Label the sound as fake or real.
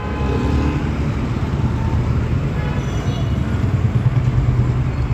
real